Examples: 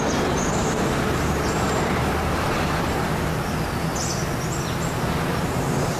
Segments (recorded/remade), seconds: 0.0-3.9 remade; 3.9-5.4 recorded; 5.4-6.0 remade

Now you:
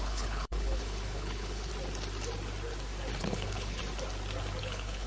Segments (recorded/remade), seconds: 0.0-1.7 remade; 1.7-3.2 recorded; 3.2-3.8 remade; 3.8-4.6 recorded; 4.6-5.1 remade

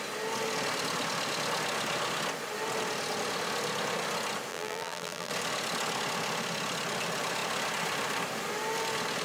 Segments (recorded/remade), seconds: 0.0-4.5 recorded; 4.5-5.3 remade; 5.3-9.2 recorded

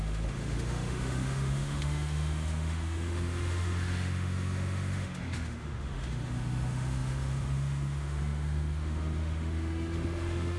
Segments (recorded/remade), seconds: 0.0-10.6 remade

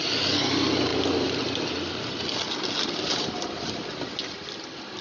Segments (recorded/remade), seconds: 0.0-5.0 recorded